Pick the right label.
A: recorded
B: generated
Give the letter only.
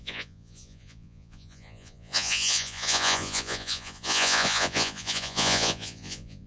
B